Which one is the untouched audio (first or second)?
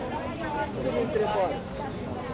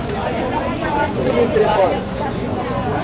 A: first